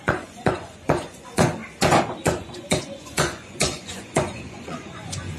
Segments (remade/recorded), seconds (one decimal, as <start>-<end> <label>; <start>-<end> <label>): 0.0-1.5 remade; 1.5-2.2 recorded; 2.2-5.4 remade